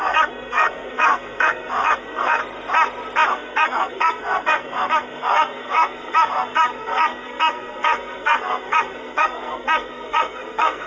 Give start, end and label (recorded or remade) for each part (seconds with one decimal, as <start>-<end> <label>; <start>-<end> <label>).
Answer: 0.0-2.4 remade; 2.4-3.3 recorded; 3.3-10.9 remade